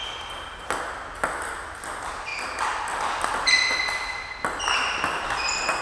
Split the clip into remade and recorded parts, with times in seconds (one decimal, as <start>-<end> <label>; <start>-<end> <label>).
0.0-5.8 recorded